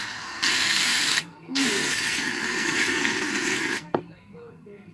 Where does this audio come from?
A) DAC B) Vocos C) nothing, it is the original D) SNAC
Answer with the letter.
D